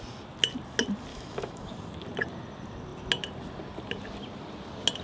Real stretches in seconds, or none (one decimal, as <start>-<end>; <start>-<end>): 0.0-1.1; 1.7-5.0